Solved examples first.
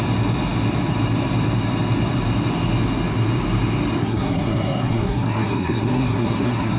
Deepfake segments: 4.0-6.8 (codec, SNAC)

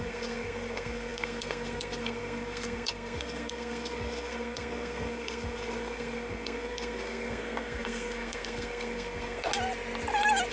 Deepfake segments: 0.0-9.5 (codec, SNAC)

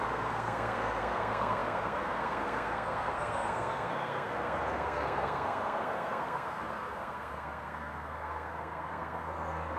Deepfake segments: 0.0-9.8 (codec, SNAC)

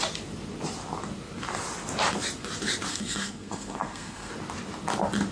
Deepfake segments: 2.9-4.3 (codec, SNAC)

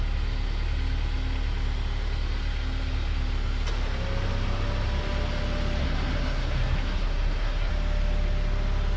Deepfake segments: 5.8-7.7 (codec, SNAC)

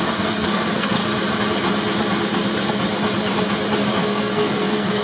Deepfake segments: 0.0-1.0 (codec, SNAC); 4.0-5.0

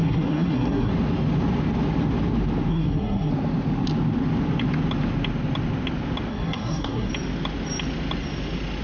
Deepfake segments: 0.0-0.9 (codec, SNAC); 2.7-3.3; 6.3-7.1

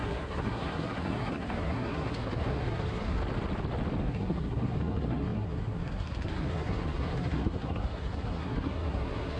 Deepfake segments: 0.0-3.2 (codec, SNAC); 4.0-9.4